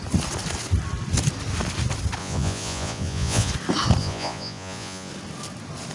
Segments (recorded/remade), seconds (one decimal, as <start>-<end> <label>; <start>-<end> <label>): 0.0-2.2 recorded; 2.2-3.5 remade; 3.5-4.0 recorded; 4.0-5.1 remade; 5.1-5.9 recorded